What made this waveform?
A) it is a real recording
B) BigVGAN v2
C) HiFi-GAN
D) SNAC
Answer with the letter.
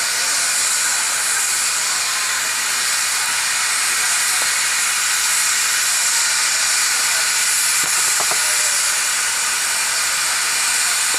A